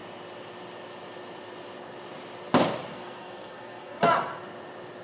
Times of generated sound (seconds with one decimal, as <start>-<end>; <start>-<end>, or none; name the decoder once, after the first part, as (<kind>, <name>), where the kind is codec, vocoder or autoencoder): 2.9-4.0 (codec, SNAC)